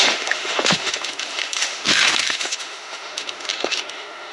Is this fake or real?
fake